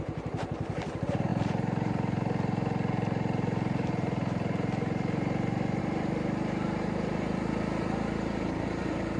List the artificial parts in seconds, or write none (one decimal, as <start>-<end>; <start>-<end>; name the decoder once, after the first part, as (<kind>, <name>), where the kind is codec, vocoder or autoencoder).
0.0-9.2 (vocoder, BigVGAN v2)